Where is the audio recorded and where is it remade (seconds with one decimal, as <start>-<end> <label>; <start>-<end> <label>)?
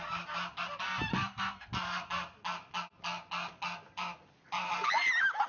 0.0-1.1 recorded; 1.1-1.7 remade; 1.7-5.5 recorded